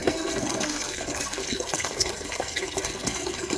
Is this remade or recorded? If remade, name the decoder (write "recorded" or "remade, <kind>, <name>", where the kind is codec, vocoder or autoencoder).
remade, codec, SNAC